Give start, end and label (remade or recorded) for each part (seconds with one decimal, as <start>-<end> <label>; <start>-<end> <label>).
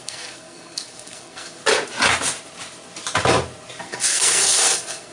0.0-1.6 remade; 1.6-3.8 recorded; 3.8-5.1 remade